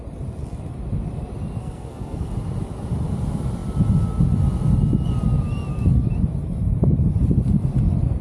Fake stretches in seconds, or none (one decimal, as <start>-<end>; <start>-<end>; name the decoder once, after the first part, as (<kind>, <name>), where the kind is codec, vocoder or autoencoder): 1.6-2.3 (codec, SNAC)